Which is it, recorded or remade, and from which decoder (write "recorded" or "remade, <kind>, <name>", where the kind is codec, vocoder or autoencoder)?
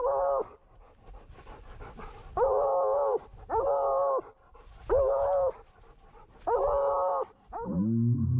recorded